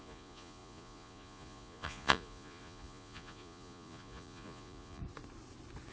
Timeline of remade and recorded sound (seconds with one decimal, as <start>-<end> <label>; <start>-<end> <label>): 0.0-5.0 remade; 5.0-5.9 recorded